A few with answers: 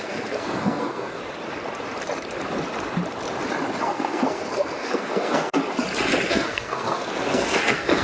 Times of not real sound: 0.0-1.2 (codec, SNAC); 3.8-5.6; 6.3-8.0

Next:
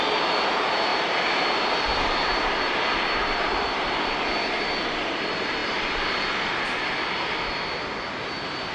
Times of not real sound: none

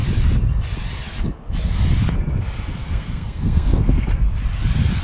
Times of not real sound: 2.8-4.2 (codec, SNAC)

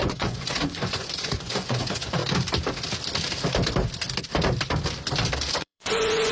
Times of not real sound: 0.0-2.2 (vocoder, Vocos); 5.5-6.3